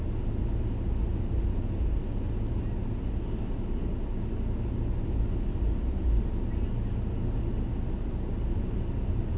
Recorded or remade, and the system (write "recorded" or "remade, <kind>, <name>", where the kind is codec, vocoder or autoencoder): recorded